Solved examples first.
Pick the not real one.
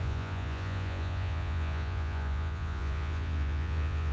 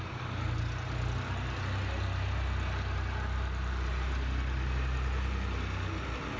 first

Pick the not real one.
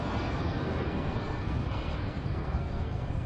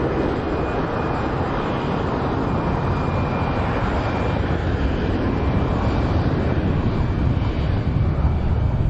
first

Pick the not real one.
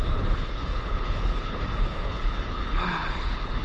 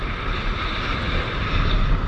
first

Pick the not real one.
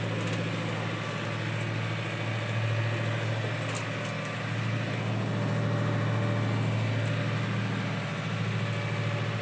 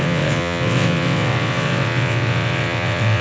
second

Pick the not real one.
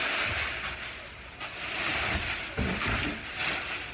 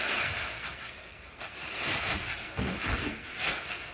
second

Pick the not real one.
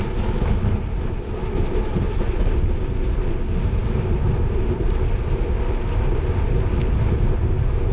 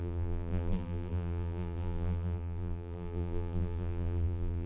second